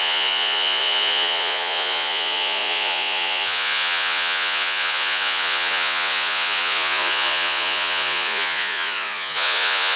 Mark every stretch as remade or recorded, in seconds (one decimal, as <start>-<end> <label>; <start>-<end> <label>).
0.0-10.0 remade